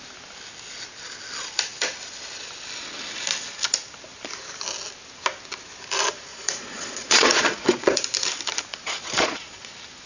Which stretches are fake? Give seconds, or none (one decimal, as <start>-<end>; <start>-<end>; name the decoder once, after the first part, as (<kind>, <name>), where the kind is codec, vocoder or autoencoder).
6.3-8.0 (vocoder, Vocos); 8.7-9.7